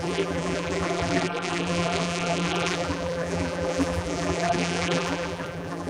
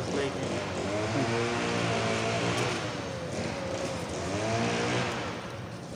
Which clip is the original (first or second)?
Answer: second